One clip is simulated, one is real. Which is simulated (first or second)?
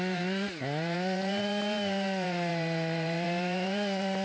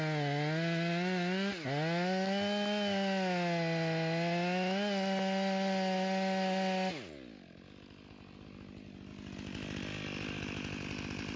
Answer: first